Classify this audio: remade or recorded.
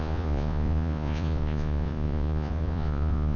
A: remade